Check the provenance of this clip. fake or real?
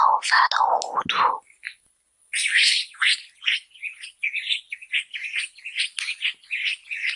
real